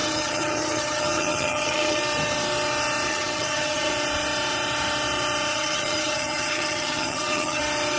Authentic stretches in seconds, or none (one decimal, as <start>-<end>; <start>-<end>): 2.0-3.1; 3.9-5.5; 7.6-8.0

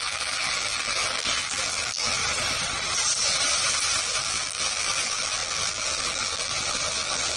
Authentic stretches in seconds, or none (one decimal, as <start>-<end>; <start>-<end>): 2.2-4.0

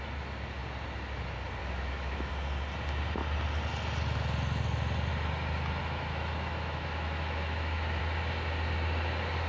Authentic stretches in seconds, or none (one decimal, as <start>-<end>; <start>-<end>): 0.0-1.6; 2.3-5.8; 8.0-9.5

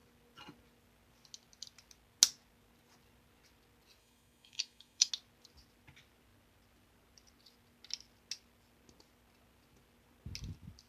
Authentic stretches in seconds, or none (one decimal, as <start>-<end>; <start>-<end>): 0.0-4.0; 5.1-10.9

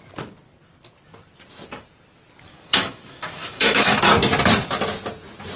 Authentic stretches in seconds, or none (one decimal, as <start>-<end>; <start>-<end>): 0.0-2.5; 4.0-5.6

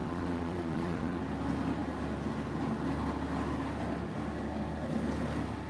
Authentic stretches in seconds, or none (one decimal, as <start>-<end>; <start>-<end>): 1.2-5.7

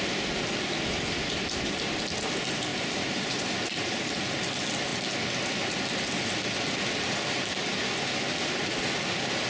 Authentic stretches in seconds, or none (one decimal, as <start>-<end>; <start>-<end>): 0.0-2.7; 4.5-9.5

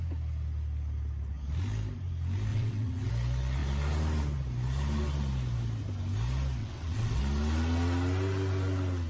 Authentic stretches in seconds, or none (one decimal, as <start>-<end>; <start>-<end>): 0.0-2.5; 3.1-6.6; 7.2-9.1